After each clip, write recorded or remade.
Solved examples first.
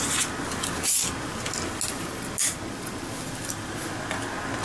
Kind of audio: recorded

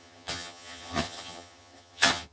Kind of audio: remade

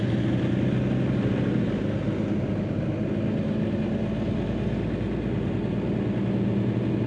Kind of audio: recorded